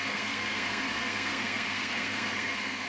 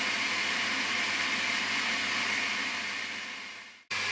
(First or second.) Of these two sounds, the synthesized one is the first